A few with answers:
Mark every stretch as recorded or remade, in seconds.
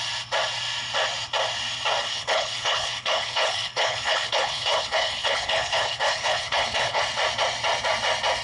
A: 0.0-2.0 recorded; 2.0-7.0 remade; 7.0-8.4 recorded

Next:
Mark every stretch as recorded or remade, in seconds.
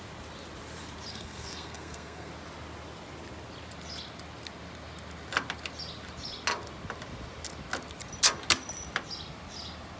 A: 0.0-1.1 recorded; 1.1-2.3 remade; 2.3-10.0 recorded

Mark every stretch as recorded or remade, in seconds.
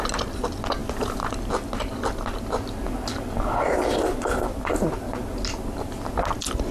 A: 0.0-6.7 recorded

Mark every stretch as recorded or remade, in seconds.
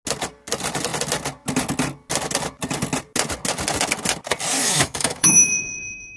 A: 0.0-4.6 recorded; 4.6-6.2 remade